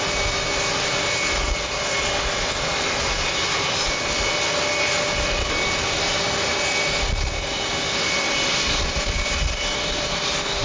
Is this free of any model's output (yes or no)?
yes